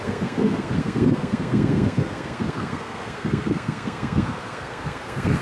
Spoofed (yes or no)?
yes